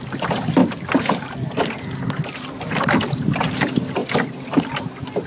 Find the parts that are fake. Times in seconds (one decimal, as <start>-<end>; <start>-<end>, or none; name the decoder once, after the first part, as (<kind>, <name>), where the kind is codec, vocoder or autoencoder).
none